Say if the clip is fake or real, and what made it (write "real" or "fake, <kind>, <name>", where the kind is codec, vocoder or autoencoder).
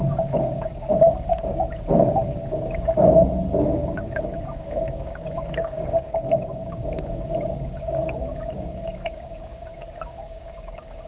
fake, codec, DAC